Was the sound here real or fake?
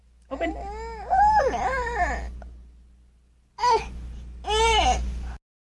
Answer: real